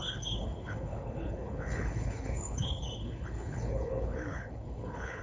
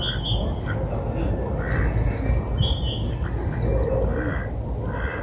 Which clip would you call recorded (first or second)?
second